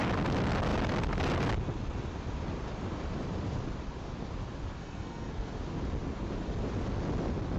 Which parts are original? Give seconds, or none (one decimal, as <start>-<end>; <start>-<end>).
0.0-4.8; 5.5-7.6